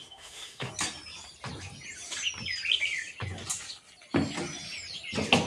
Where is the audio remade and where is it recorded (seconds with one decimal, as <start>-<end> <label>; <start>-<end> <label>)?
0.0-0.7 remade; 0.7-5.5 recorded